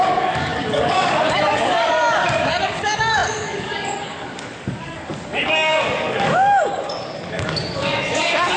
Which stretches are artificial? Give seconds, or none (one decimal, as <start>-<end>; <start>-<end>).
0.0-8.6